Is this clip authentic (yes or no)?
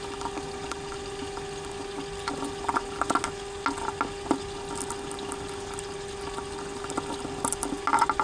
yes